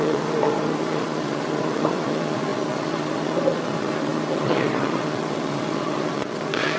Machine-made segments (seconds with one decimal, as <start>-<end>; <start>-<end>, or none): 0.0-6.8